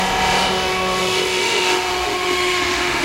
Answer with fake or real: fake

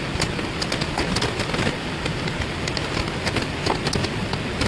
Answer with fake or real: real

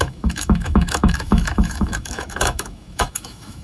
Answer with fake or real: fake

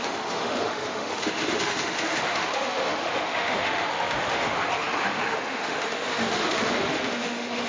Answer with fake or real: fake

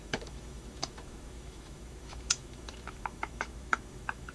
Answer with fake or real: fake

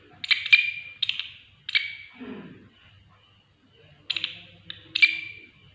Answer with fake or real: real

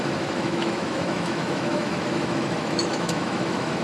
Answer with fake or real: fake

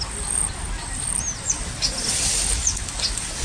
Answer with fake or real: real